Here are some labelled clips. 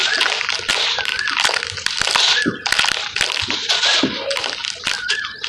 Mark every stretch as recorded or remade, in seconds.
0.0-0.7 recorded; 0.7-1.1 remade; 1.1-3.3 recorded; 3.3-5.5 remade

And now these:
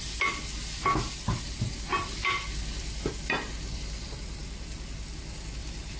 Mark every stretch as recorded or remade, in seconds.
0.0-6.0 recorded

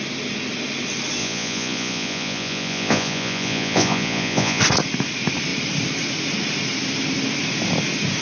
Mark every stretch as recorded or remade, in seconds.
0.0-1.2 recorded; 1.2-4.6 remade; 4.6-8.2 recorded